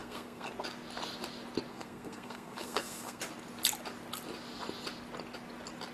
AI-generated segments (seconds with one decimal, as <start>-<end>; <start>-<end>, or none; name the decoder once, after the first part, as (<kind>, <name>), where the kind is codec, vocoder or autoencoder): 0.0-0.5 (codec, SNAC); 1.7-3.2

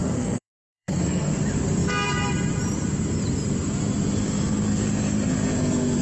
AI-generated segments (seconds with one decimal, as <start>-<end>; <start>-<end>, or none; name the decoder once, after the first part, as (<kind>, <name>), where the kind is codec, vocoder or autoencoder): 0.0-1.3 (codec, SNAC)

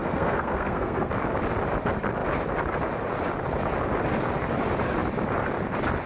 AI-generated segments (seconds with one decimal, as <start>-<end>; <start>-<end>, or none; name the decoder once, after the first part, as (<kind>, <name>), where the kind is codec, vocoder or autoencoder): 0.0-1.1 (codec, SNAC)

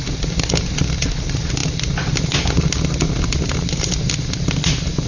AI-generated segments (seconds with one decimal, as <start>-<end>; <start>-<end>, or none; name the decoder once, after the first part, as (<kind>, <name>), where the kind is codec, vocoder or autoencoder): none

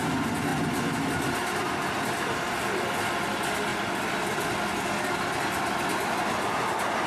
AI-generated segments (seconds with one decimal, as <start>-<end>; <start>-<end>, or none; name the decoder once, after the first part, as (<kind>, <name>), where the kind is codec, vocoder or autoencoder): none

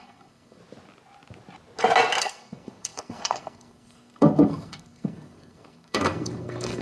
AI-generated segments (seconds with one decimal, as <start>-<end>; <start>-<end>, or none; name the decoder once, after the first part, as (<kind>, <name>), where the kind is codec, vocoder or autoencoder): 0.0-0.6 (codec, SNAC); 2.2-6.8